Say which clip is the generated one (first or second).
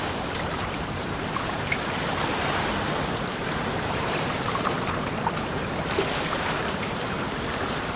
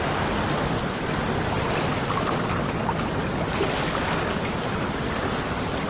first